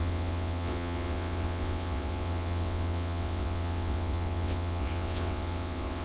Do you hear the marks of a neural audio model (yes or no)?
yes